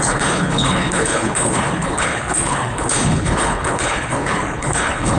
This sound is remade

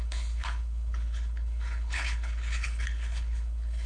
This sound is remade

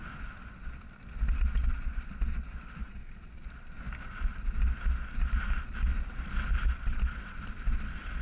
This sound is recorded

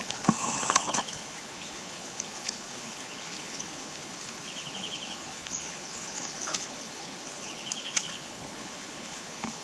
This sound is remade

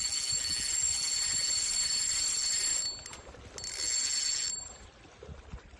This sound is recorded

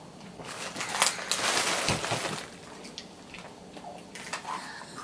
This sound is recorded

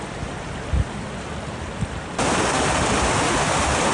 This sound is recorded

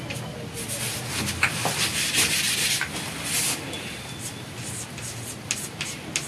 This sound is recorded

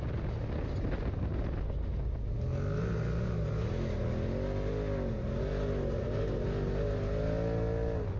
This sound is recorded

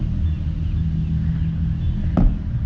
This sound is recorded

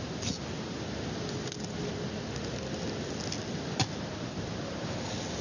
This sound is recorded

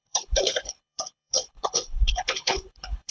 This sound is remade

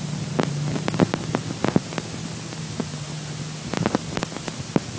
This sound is recorded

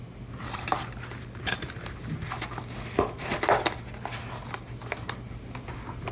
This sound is recorded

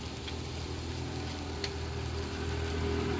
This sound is recorded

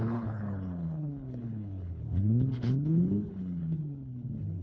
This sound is remade